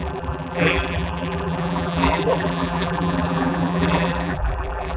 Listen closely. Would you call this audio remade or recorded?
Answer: remade